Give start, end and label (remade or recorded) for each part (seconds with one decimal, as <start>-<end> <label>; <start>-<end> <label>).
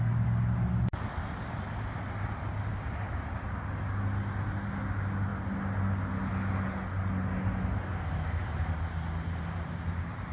0.0-10.3 recorded